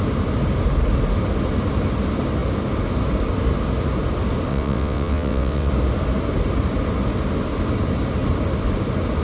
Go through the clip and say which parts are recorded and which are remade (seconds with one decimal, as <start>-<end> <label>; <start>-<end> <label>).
0.0-4.5 recorded; 4.5-5.7 remade; 5.7-9.2 recorded